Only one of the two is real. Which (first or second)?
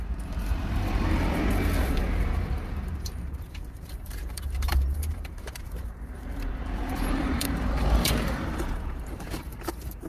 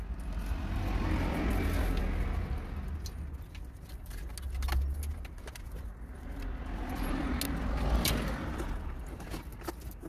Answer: second